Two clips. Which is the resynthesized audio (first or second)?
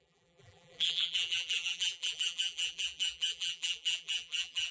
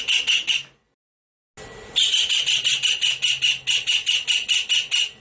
first